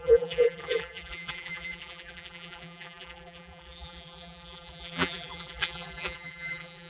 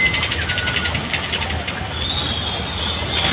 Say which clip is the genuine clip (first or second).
second